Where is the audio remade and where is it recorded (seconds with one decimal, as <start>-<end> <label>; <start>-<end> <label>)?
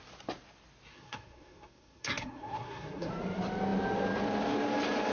0.0-0.9 recorded; 0.9-3.1 remade; 3.1-5.1 recorded